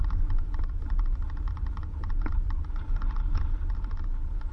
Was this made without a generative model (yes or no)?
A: no